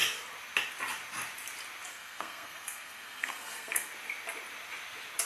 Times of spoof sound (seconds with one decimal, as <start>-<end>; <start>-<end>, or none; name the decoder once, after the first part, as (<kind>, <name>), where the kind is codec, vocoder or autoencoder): 1.9-3.9 (codec, SNAC)